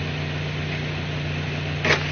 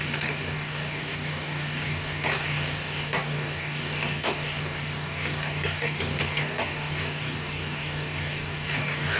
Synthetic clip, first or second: second